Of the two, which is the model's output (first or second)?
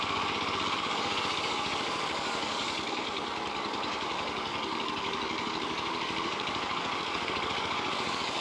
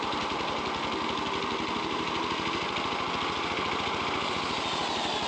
first